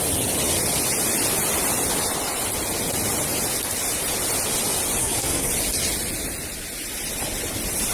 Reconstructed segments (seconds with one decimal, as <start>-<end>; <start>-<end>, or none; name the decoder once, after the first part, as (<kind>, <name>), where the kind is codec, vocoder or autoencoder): 5.0-5.5 (codec, SNAC)